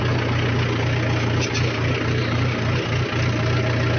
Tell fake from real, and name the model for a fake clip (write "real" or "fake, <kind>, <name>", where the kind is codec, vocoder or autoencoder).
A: real